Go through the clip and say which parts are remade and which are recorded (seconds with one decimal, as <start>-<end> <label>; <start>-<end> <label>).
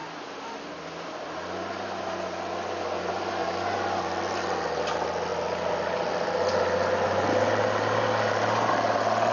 0.0-9.3 recorded